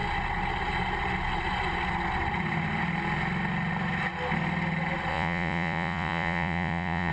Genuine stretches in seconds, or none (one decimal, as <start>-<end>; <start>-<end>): 0.0-5.1

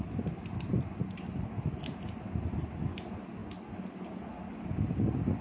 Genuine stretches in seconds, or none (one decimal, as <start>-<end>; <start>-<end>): 0.0-5.4

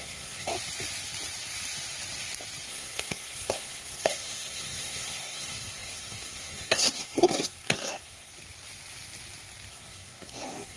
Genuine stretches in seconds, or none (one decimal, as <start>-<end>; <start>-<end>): 0.5-2.7; 8.3-9.7

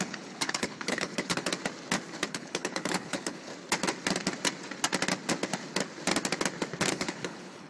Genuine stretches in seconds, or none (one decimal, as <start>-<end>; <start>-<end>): 1.5-2.3; 3.5-6.9

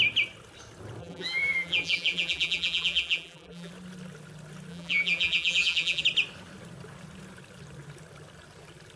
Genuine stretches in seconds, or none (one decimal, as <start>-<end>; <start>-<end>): 0.0-1.0; 3.7-4.7; 6.0-9.0

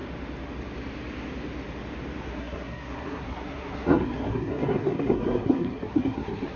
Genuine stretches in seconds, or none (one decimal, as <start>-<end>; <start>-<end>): 0.0-2.3